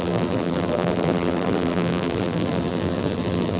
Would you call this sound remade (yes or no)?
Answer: yes